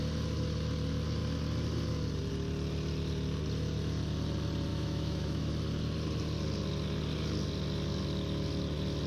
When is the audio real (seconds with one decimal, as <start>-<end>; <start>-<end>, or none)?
0.0-4.7; 5.5-9.1